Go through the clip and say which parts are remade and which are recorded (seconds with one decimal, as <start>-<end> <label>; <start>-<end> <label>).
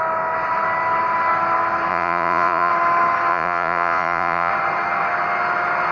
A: 0.0-1.9 recorded; 1.9-2.7 remade; 2.7-3.3 recorded; 3.3-4.5 remade; 4.5-5.9 recorded